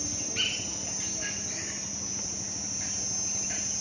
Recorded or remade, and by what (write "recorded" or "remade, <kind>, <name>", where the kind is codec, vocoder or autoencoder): recorded